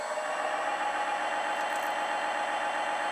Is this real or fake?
real